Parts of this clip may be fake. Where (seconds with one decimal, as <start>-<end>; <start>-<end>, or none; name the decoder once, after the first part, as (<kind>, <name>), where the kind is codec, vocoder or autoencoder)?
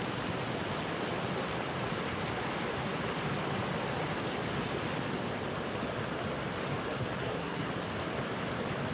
7.2-7.7 (codec, SNAC)